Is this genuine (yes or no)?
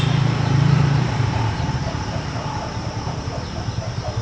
no